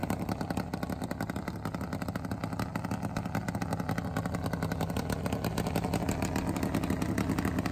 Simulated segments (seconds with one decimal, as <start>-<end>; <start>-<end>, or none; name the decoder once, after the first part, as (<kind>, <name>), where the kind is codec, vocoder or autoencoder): 0.0-1.5 (vocoder, BigVGAN v2)